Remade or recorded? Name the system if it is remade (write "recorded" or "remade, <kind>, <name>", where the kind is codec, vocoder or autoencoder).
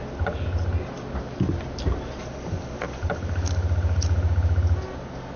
recorded